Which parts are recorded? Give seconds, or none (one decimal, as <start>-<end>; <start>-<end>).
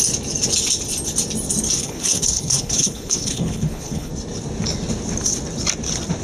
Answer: 0.0-1.8; 4.1-6.2